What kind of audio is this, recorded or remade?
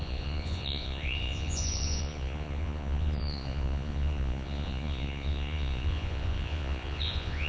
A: remade